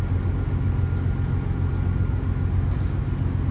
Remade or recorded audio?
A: recorded